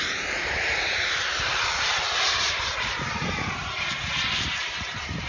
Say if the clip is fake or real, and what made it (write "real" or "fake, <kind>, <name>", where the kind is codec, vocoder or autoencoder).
fake, vocoder, BigVGAN v2